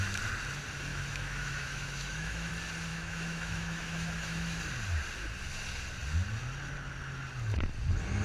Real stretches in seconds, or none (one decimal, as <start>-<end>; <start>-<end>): 0.0-0.9; 2.5-2.9; 4.6-8.2